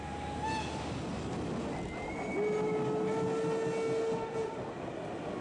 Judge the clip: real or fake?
real